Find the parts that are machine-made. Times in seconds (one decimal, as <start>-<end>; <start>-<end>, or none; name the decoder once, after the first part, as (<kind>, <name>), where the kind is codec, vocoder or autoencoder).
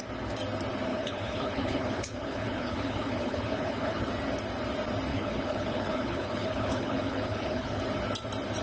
0.9-4.1 (codec, HILCodec); 5.1-7.8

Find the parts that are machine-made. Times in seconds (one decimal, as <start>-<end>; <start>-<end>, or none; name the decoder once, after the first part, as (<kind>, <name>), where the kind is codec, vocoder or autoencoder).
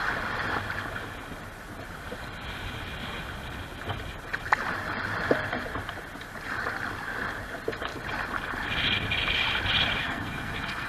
10.0-10.9 (codec, SNAC)